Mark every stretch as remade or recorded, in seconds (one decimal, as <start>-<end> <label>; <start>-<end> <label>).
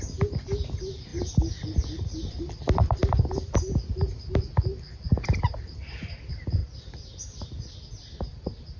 0.0-1.1 recorded; 1.1-3.2 remade; 3.2-8.8 recorded